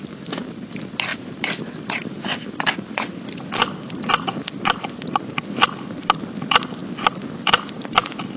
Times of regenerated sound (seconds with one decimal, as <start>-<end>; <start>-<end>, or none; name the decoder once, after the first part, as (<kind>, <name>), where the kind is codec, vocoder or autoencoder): 1.1-5.2 (vocoder, BigVGAN v2)